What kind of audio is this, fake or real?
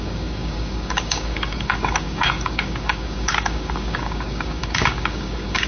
fake